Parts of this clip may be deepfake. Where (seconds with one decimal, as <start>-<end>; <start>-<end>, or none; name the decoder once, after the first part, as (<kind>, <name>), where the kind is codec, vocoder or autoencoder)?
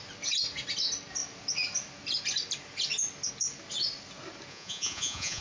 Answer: 4.5-5.4 (vocoder, Vocos)